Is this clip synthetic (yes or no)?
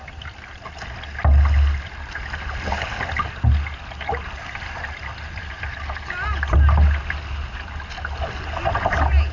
no